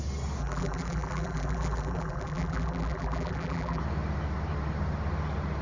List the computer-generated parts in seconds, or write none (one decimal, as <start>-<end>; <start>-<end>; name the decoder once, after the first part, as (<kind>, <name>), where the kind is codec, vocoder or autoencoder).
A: 0.4-3.8 (vocoder, BigVGAN v2)